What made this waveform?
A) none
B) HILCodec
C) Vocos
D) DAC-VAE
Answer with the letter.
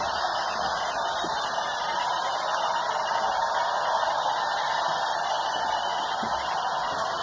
A